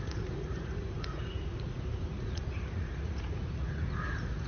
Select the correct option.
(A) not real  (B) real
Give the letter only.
A